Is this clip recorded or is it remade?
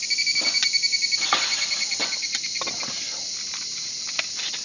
recorded